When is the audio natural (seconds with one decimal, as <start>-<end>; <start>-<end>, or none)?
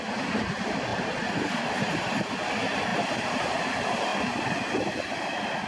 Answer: 0.0-0.9; 2.3-2.9; 3.6-5.7